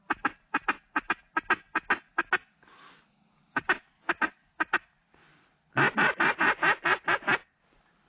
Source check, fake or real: real